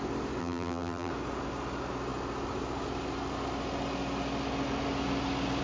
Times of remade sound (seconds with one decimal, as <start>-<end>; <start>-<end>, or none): 0.4-1.1